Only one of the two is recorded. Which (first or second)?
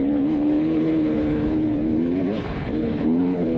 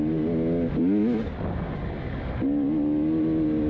second